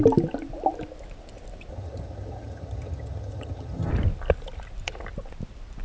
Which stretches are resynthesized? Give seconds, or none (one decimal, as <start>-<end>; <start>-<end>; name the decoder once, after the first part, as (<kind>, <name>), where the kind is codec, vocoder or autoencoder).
1.7-3.9 (vocoder, HiFi-GAN)